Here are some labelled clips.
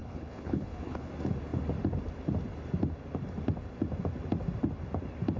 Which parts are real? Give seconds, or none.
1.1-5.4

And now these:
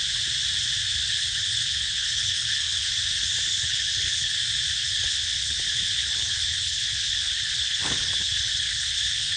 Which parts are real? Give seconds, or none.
0.0-1.0; 2.9-3.5; 4.3-4.8

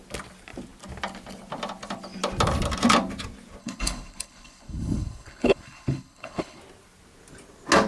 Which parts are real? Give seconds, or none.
0.0-3.6; 6.6-7.9

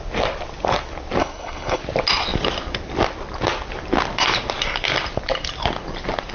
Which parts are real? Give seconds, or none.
0.0-1.2; 1.8-6.3

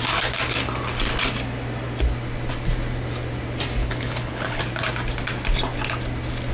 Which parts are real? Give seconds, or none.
0.0-3.8; 4.6-6.5

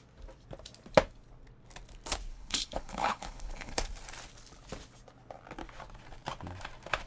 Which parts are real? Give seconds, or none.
0.0-2.3; 3.8-7.1

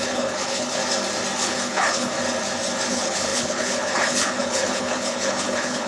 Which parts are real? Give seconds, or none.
0.8-1.4; 2.1-2.9

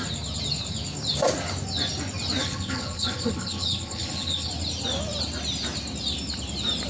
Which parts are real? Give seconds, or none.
0.0-2.4; 4.5-6.9